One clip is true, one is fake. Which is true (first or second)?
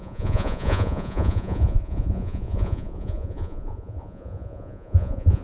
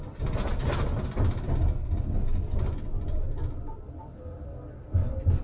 second